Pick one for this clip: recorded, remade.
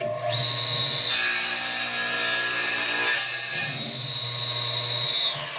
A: recorded